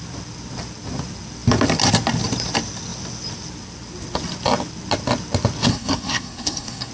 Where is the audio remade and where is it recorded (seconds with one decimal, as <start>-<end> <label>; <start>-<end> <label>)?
0.0-5.7 recorded; 5.7-6.9 remade